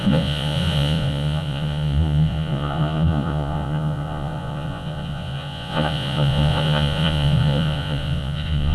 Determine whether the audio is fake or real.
fake